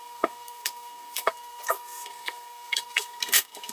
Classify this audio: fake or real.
fake